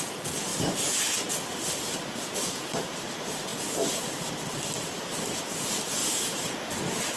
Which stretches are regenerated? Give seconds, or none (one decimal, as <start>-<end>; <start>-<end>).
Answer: none